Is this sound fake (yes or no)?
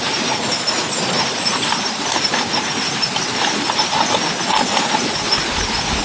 no